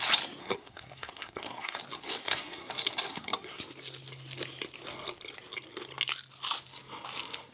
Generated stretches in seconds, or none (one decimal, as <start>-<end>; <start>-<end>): 0.4-1.8; 2.2-2.7; 3.1-3.6